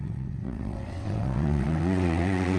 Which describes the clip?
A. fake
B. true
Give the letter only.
A